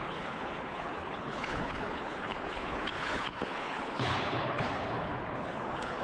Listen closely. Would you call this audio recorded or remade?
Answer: remade